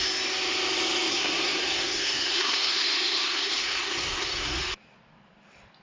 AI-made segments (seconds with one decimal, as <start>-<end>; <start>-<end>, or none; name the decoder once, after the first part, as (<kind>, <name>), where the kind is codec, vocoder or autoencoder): 1.1-4.6 (codec, SNAC)